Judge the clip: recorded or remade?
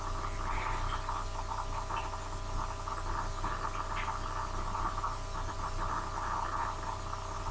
recorded